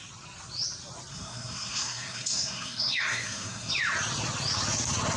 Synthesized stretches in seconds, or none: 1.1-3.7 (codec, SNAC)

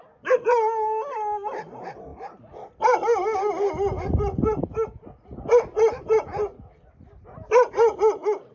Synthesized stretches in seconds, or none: none

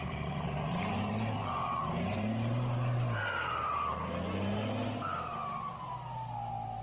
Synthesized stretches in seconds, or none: 0.0-4.1 (vocoder, BigVGAN v2)

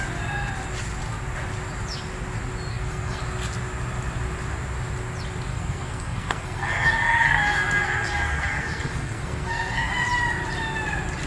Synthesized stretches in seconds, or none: 2.7-3.2 (codec, SNAC); 5.5-9.9

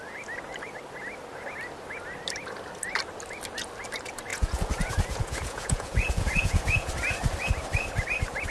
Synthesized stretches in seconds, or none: 4.3-6.9 (vocoder, Vocos)

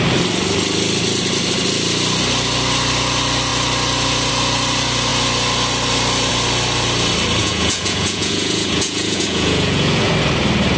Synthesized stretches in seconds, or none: 7.4-10.1 (vocoder, Vocos)